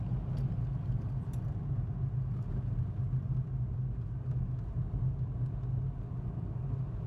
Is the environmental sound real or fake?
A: real